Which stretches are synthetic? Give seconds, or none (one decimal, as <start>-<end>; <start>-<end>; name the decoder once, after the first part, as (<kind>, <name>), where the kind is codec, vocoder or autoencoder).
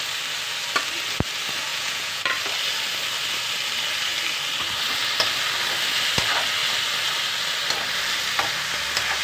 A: 1.7-2.2 (vocoder, Vocos)